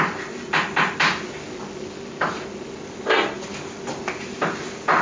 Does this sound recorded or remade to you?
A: recorded